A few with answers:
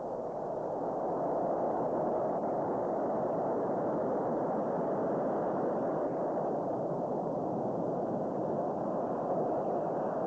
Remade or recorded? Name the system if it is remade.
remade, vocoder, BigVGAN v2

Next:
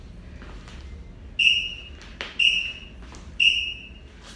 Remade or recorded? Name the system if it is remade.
recorded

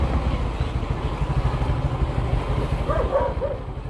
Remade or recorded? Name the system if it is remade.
recorded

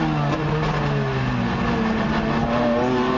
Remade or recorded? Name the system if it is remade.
recorded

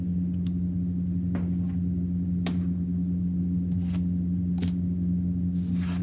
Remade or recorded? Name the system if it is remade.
recorded